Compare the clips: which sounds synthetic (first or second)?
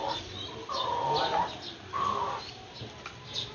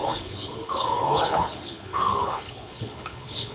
second